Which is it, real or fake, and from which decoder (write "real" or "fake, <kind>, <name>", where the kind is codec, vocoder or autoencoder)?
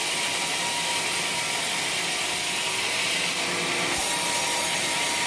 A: real